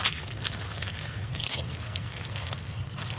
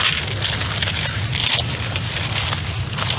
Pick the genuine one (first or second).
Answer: second